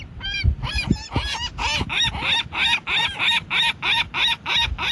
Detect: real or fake real